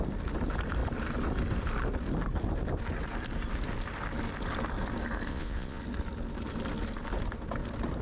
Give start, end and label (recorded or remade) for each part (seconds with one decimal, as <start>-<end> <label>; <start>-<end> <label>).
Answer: 0.0-5.3 recorded; 5.3-5.8 remade; 5.8-8.0 recorded